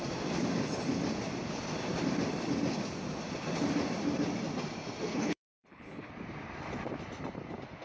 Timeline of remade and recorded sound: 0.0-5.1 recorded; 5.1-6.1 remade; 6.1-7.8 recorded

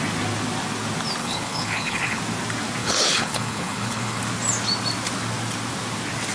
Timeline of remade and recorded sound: 0.0-1.2 recorded; 1.2-2.2 remade; 2.2-2.8 recorded; 2.8-4.2 remade; 4.2-6.3 recorded